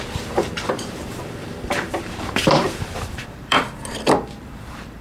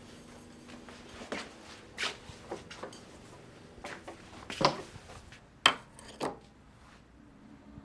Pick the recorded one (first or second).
second